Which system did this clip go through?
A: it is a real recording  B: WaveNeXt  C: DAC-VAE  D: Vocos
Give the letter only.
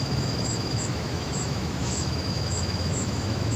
C